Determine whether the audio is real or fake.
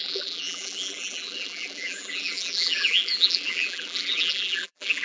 fake